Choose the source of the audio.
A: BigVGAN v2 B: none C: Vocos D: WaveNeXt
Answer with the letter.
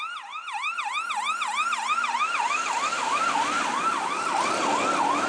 B